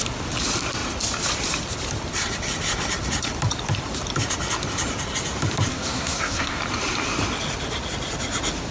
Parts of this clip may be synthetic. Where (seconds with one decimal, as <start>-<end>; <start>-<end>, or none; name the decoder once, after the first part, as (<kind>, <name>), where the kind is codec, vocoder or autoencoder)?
5.7-6.6 (codec, SNAC)